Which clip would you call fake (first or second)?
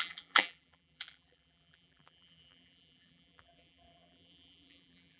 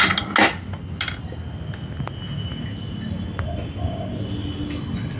first